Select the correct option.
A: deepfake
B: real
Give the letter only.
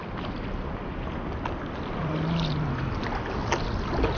B